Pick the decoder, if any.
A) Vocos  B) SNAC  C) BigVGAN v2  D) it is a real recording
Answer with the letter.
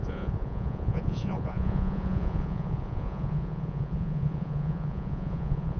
A